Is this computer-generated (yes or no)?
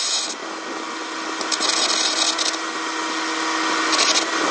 no